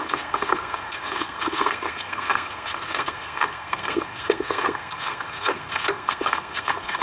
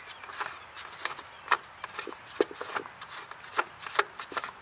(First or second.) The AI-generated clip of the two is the first